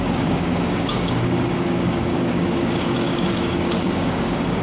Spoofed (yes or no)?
yes